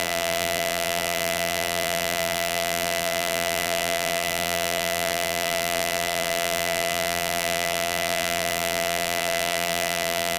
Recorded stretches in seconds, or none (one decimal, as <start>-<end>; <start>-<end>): none